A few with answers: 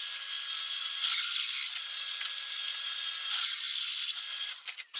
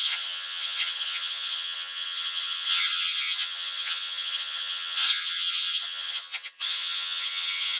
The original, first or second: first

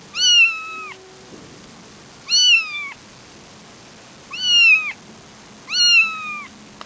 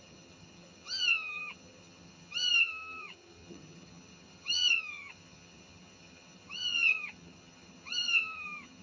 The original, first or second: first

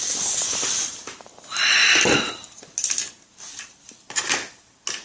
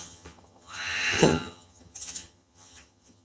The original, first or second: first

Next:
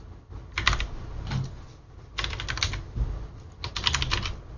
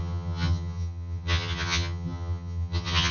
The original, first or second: first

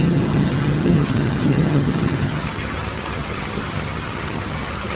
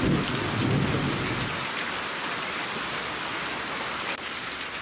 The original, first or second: second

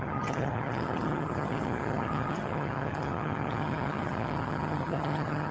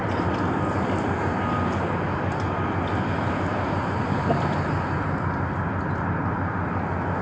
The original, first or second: second